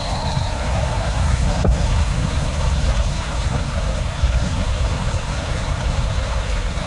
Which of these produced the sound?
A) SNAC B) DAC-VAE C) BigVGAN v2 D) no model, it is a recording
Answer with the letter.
A